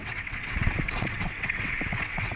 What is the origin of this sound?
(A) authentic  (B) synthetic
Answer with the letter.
B